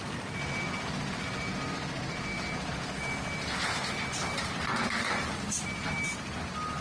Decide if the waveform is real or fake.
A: real